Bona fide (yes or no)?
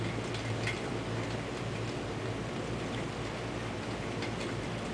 yes